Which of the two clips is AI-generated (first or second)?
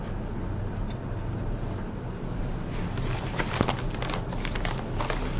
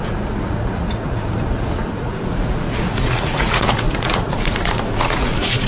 second